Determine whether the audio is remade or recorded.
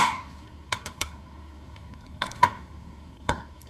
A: remade